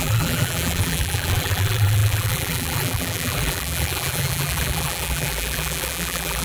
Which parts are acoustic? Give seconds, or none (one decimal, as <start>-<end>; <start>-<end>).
none